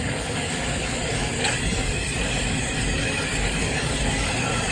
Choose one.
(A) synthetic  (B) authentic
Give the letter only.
A